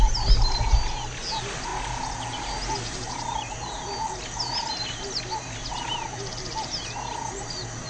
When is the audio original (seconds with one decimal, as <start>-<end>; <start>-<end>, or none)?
0.0-7.9